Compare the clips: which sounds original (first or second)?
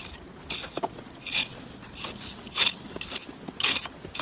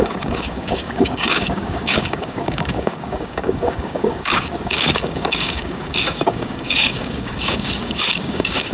first